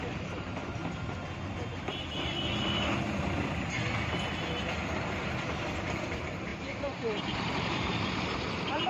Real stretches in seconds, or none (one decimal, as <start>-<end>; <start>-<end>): 0.6-5.8